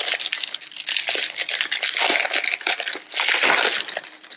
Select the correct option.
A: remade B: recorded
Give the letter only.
B